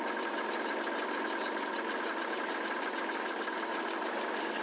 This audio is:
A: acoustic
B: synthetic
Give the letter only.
A